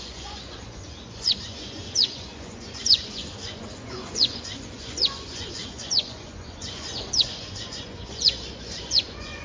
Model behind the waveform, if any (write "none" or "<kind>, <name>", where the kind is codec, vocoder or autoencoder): vocoder, Vocos